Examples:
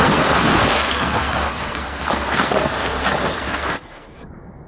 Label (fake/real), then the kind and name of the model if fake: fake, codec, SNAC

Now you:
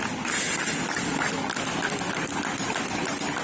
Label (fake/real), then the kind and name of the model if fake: real